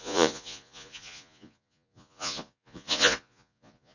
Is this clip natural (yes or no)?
no